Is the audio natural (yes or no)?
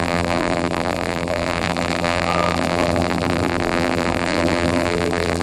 no